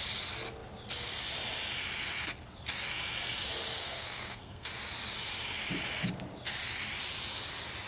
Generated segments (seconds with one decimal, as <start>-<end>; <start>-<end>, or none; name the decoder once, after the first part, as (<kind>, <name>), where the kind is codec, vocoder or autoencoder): 3.8-4.7 (codec, SNAC)